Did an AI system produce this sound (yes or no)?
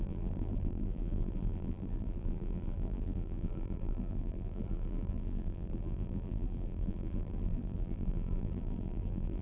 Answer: yes